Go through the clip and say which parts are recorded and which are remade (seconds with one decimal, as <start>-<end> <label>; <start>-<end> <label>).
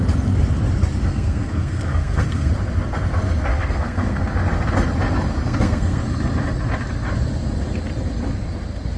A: 0.0-1.0 recorded; 1.0-2.5 remade; 2.5-3.5 recorded; 3.5-4.2 remade; 4.2-5.4 recorded; 5.4-6.0 remade; 6.0-9.0 recorded